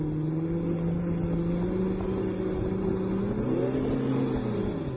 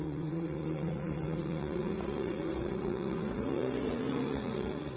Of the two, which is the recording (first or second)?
first